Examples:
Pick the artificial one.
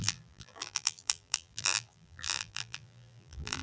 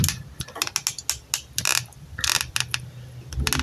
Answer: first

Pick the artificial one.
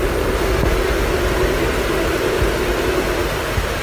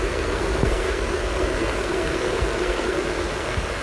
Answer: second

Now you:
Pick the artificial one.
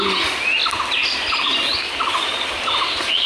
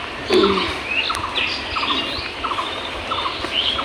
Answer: second